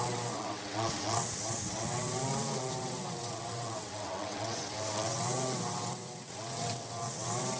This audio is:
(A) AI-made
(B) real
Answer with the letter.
A